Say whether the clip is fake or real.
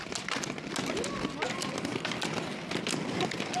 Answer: real